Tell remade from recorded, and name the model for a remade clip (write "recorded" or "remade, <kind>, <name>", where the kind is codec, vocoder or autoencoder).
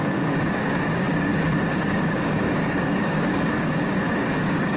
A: remade, codec, DAC